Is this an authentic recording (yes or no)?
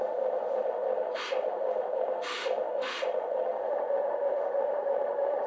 no